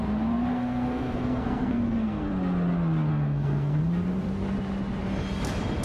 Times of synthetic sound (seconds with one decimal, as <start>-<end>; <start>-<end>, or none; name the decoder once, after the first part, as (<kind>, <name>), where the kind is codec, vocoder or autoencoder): 0.5-2.3 (codec, SNAC); 3.1-3.8